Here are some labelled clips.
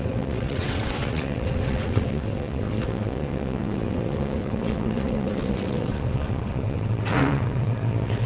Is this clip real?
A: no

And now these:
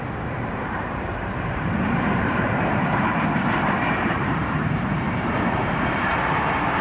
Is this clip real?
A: no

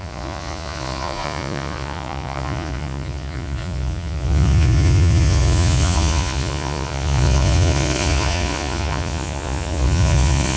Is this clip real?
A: no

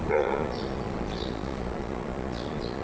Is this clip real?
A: no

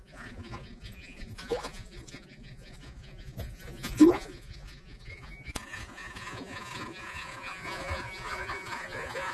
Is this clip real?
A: no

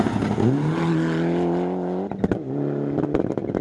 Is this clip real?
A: yes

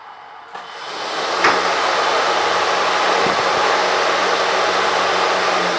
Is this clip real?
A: yes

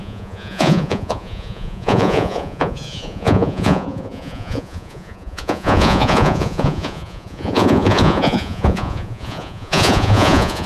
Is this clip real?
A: no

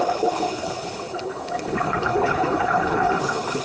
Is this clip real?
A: no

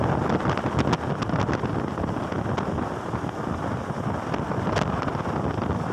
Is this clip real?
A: yes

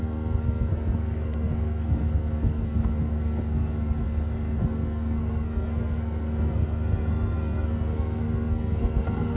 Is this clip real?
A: no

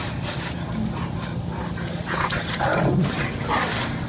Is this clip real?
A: yes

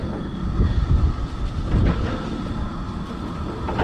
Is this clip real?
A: yes